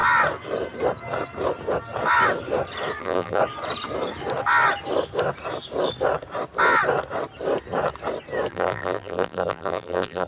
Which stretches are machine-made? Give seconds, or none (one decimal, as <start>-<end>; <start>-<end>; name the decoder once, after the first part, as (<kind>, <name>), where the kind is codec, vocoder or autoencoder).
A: 3.0-3.4 (vocoder, BigVGAN v2); 8.5-10.3